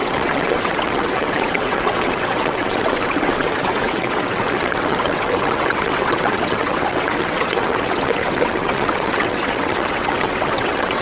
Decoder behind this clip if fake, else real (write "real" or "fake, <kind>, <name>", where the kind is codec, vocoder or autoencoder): fake, vocoder, WaveNeXt